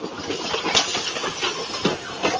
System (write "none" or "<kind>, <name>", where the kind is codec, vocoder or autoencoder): none